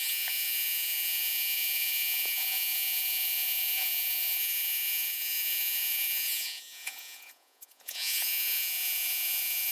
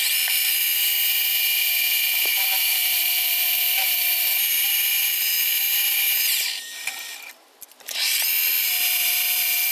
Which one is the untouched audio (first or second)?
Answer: second